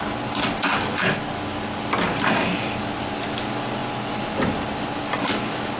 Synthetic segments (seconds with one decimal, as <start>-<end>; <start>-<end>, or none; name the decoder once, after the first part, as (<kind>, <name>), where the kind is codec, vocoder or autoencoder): none